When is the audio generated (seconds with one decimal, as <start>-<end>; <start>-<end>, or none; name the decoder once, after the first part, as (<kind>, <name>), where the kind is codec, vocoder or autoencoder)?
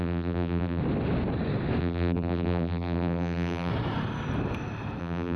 0.0-0.8 (vocoder, BigVGAN v2); 1.8-3.7; 5.0-5.4